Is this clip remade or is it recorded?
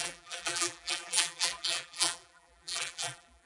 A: remade